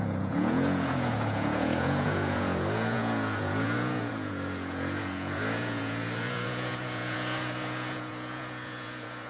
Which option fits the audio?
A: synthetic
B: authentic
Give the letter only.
A